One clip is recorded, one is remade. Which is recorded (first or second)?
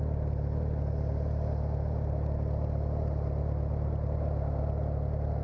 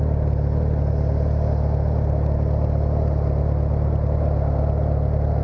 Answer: second